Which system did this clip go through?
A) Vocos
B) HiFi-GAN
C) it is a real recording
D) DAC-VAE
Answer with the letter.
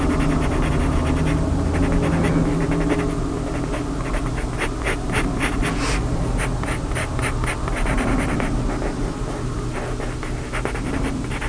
C